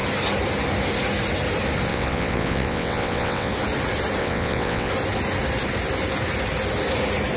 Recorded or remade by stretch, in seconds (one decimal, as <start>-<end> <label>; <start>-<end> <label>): 0.0-1.9 recorded; 1.9-3.5 remade; 3.5-4.2 recorded; 4.2-4.9 remade; 4.9-7.4 recorded